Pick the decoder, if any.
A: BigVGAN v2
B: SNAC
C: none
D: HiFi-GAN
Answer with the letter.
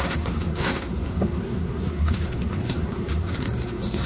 B